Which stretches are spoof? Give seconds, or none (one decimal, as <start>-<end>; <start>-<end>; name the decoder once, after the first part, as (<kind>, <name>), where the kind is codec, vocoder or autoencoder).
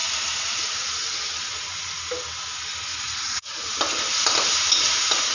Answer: 0.0-2.1 (vocoder, Vocos); 2.9-3.8